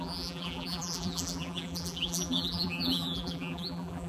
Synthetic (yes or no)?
yes